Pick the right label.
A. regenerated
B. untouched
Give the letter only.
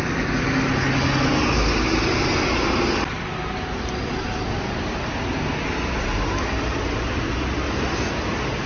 B